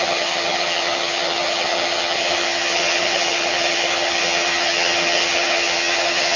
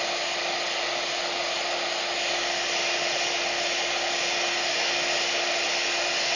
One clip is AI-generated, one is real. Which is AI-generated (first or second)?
first